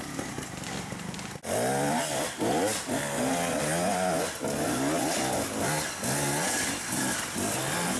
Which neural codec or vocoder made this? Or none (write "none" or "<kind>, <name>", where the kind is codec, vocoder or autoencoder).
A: none